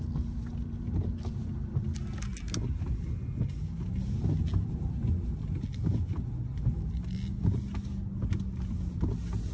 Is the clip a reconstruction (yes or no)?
no